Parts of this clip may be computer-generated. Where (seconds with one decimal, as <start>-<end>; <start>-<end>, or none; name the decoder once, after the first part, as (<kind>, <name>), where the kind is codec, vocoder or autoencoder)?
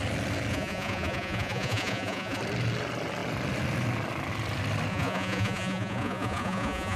0.5-2.4 (vocoder, Vocos); 4.9-7.0